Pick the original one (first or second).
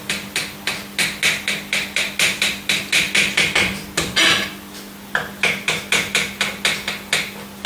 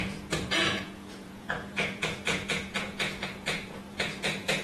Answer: first